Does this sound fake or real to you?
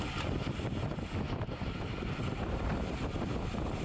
real